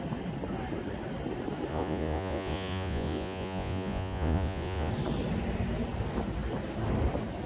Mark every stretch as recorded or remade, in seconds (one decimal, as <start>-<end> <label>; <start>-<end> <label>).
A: 0.0-1.7 recorded; 1.7-4.9 remade; 4.9-7.5 recorded